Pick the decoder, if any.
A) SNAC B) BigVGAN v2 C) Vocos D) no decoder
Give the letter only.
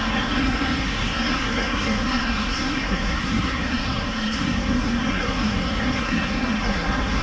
A